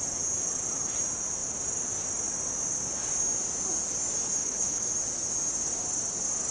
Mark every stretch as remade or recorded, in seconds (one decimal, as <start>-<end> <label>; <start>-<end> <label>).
0.0-4.4 recorded; 4.4-4.9 remade; 4.9-6.5 recorded